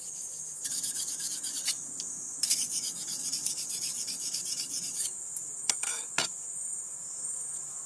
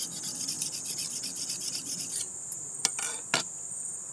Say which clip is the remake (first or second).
first